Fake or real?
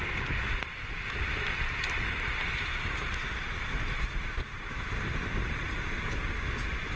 real